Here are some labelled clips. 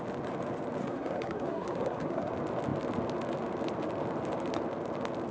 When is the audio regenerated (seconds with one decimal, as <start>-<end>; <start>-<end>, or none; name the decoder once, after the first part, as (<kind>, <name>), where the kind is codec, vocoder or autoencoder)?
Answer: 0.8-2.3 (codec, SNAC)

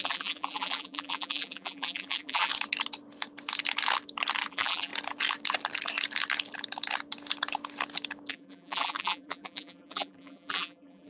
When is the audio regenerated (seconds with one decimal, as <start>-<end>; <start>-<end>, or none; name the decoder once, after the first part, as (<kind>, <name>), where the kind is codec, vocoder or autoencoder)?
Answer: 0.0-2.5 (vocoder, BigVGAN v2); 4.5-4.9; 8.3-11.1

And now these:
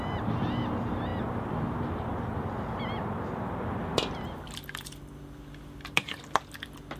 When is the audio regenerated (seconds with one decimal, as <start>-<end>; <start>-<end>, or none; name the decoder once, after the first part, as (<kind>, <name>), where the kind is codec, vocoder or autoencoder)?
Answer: none